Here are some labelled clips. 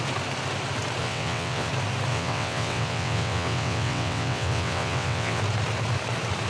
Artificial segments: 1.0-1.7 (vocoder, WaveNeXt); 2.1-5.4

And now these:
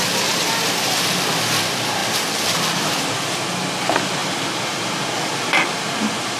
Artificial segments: 2.0-3.1 (vocoder, BigVGAN v2); 4.2-5.3

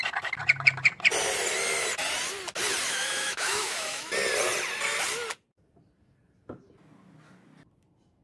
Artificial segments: 2.8-4.1 (autoencoder, DAC-VAE)